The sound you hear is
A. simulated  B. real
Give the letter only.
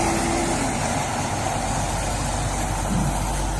B